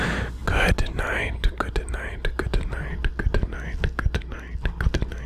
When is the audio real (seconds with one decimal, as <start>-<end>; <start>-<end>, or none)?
0.0-5.3

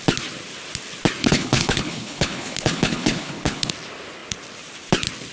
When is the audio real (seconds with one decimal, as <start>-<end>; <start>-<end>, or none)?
0.0-1.2; 3.7-5.3

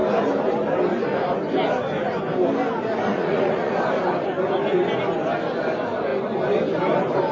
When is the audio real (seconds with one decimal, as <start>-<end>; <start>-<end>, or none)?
0.0-3.1; 3.7-7.3

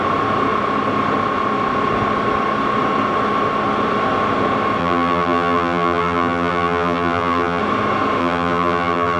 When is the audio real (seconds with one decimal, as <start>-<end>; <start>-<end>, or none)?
0.0-4.8; 7.6-8.2